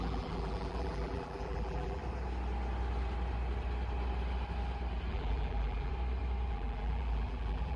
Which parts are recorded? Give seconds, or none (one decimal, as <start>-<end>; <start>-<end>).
2.0-5.1; 5.9-6.5